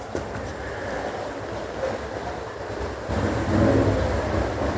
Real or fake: real